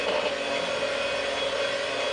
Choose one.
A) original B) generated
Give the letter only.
A